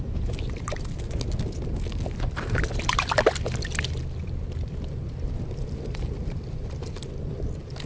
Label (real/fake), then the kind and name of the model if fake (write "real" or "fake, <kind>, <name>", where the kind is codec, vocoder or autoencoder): real